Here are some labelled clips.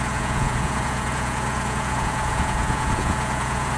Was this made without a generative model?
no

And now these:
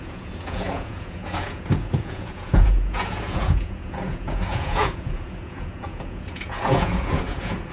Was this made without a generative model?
no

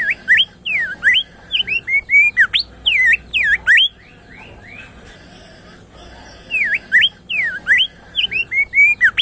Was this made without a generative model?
yes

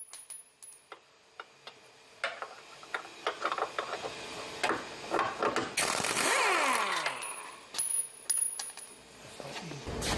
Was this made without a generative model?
yes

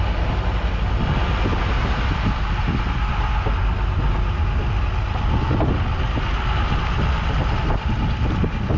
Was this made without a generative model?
yes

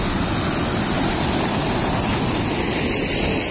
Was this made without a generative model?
yes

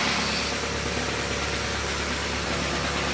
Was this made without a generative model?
yes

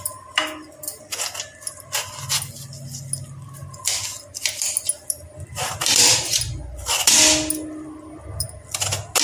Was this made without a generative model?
yes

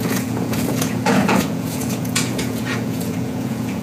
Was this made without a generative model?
no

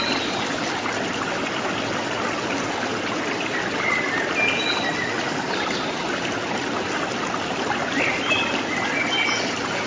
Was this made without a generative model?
yes